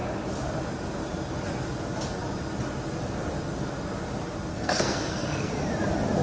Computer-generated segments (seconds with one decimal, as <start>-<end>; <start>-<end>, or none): 4.5-5.5